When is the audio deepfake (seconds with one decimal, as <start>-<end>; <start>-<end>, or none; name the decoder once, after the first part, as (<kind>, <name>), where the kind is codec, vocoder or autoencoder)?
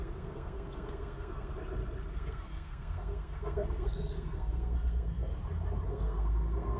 0.0-1.5 (codec, SNAC); 2.1-5.3; 5.9-6.8